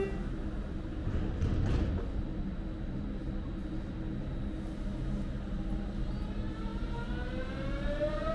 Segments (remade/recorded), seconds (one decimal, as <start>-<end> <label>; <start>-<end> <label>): 0.0-8.3 recorded